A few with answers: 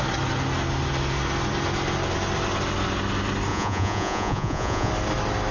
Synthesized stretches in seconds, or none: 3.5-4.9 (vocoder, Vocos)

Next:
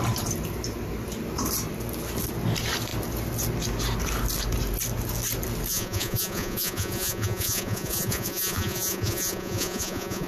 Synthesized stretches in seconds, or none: 5.7-10.3 (vocoder, Vocos)

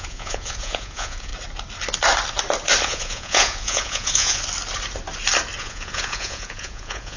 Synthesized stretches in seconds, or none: 0.0-1.3 (vocoder, Vocos); 2.8-4.4; 5.6-7.2

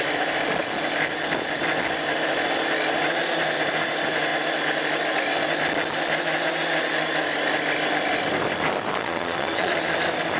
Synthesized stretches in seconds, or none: 9.0-9.7 (vocoder, Vocos)

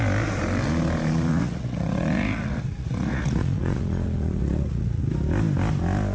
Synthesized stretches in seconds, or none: 1.3-5.0 (vocoder, Vocos)

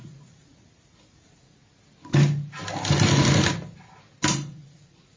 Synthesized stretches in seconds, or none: 0.0-1.6 (vocoder, Vocos); 4.3-5.2